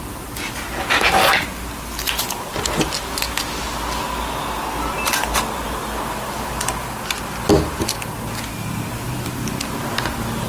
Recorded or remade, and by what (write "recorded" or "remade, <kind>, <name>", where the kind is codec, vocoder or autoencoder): recorded